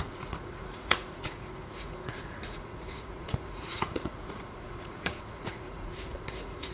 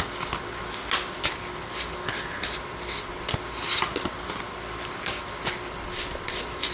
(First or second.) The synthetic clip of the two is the first